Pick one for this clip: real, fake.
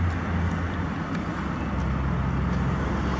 real